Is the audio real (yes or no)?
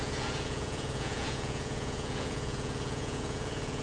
no